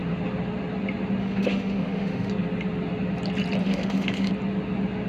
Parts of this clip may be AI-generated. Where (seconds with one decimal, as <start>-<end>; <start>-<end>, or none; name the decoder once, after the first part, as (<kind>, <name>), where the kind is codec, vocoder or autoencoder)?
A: 1.2-2.3 (autoencoder, DAC-VAE); 3.6-4.3